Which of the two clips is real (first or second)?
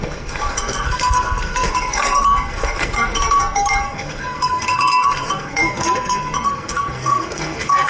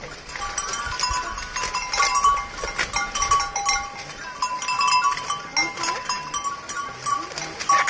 second